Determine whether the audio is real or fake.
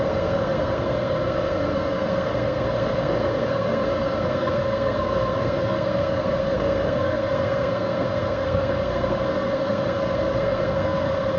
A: fake